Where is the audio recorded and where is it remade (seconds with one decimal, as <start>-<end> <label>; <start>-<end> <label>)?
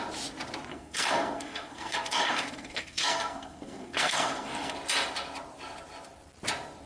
0.0-0.7 recorded; 0.7-4.8 remade; 4.8-6.9 recorded